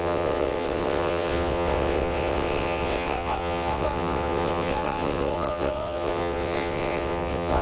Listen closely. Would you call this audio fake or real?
fake